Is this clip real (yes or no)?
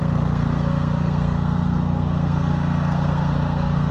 no